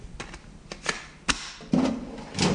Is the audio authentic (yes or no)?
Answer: yes